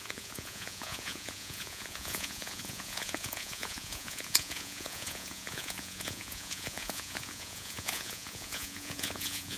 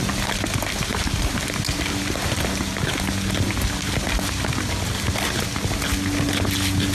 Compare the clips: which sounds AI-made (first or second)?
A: first